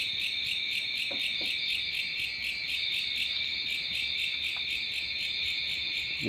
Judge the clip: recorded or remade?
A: recorded